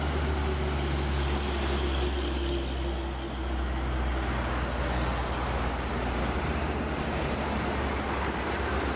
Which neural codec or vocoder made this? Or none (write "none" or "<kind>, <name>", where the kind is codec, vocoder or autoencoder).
none